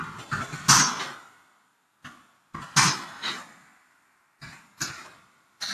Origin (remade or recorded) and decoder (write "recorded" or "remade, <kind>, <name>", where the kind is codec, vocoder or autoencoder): recorded